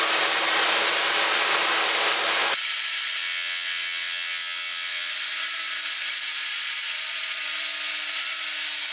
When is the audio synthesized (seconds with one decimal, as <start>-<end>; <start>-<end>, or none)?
3.2-5.1